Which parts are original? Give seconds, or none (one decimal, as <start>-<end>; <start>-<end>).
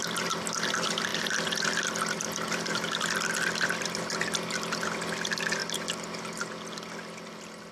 0.0-1.1; 3.8-5.6; 6.2-7.7